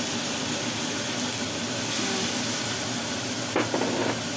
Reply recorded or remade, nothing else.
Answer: recorded